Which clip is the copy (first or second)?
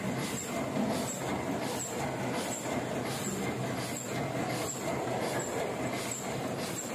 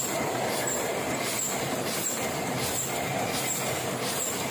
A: second